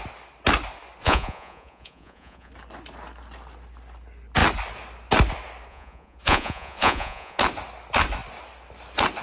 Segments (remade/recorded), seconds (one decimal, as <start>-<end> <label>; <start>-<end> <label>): 0.0-1.0 recorded; 1.0-2.5 remade; 2.5-5.7 recorded; 5.7-7.4 remade; 7.4-9.2 recorded